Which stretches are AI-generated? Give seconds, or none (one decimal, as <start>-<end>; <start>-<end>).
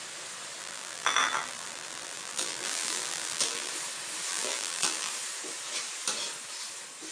0.6-3.7; 4.3-5.1